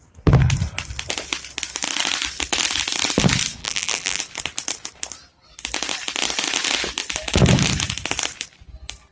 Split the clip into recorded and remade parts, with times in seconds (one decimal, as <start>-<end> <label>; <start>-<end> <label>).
0.0-3.6 recorded; 3.6-4.2 remade; 4.2-9.1 recorded